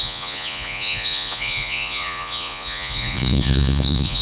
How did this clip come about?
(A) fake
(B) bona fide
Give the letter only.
A